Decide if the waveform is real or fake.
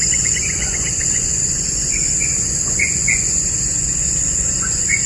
fake